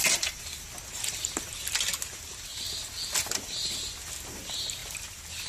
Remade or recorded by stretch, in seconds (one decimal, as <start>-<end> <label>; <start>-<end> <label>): 0.0-5.5 recorded